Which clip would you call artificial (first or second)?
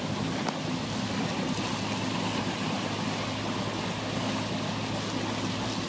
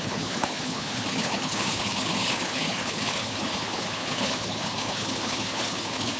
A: second